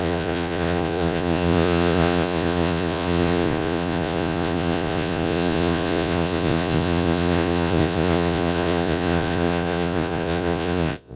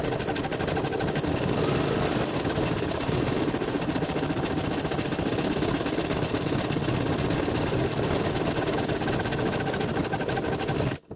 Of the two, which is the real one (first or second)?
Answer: second